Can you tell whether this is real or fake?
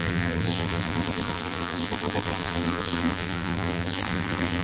fake